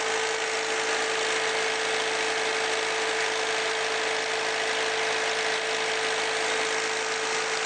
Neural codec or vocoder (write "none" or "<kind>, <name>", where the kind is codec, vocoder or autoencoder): none